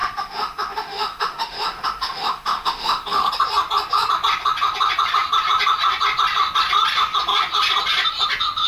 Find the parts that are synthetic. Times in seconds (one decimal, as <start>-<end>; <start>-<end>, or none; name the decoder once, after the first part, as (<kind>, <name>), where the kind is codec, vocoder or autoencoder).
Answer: 0.0-3.3 (autoencoder, DAC-VAE)

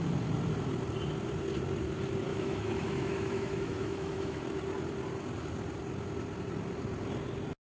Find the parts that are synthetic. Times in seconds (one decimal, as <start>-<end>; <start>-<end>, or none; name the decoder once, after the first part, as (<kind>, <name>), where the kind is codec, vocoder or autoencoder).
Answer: 2.3-4.4 (autoencoder, DAC-VAE)

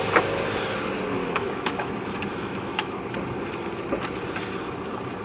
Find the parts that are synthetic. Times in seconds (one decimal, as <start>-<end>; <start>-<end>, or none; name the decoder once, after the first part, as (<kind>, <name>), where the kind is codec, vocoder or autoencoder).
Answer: 1.2-1.9 (autoencoder, DAC-VAE); 2.3-3.0

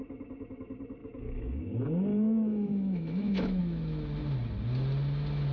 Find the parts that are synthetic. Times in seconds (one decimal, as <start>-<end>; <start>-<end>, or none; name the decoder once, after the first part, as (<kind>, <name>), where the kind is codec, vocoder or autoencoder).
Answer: 1.0-1.6 (autoencoder, DAC-VAE); 2.1-3.6

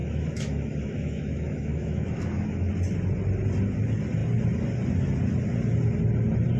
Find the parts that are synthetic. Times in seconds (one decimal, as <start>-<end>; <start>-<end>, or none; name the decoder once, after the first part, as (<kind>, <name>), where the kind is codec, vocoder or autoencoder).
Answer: 0.0-2.7 (autoencoder, DAC-VAE)

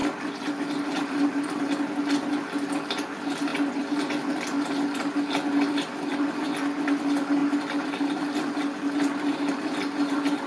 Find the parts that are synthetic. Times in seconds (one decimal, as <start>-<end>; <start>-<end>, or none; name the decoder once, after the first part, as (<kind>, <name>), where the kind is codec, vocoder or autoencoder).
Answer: none